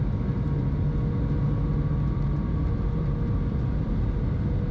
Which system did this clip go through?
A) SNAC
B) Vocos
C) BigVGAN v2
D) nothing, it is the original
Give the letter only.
D